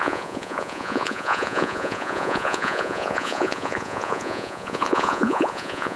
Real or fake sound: fake